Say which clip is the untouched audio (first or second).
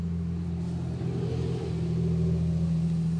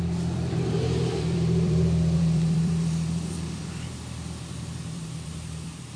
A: first